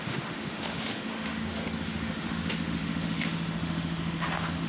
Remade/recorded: remade